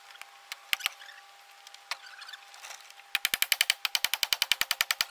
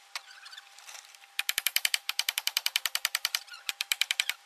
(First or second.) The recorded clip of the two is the first